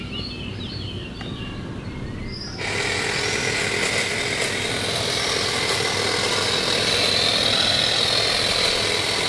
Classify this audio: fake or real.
real